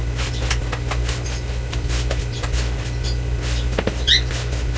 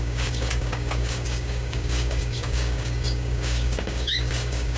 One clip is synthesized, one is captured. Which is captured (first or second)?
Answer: first